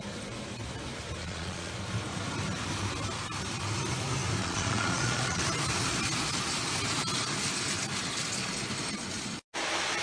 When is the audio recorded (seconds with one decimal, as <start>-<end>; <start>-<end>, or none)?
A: 0.0-1.2; 1.7-4.4; 5.4-10.0